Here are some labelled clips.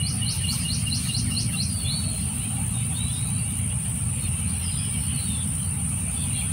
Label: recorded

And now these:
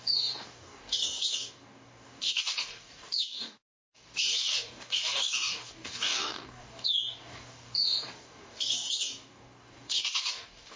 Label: remade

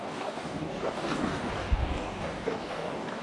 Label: remade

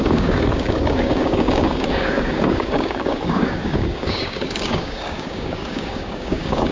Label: remade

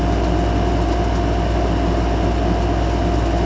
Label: recorded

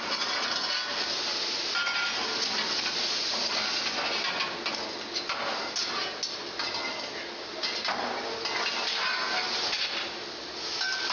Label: recorded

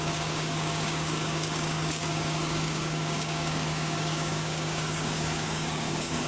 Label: remade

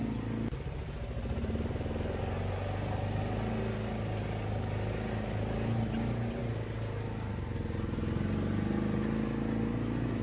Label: recorded